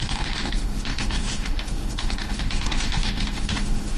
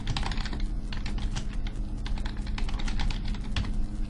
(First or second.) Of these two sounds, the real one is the second